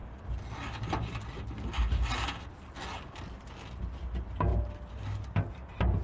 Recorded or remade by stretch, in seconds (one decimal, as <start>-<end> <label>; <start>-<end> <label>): 0.0-6.0 recorded